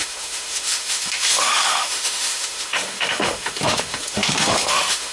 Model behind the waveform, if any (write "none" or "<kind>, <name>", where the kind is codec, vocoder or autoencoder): autoencoder, DAC-VAE